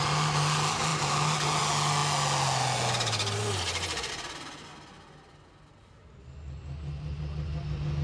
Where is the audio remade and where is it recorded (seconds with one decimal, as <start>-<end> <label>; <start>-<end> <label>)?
0.0-8.0 recorded